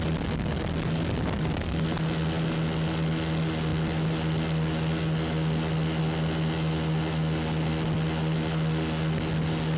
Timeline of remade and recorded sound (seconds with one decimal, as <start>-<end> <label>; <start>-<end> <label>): 0.0-9.8 recorded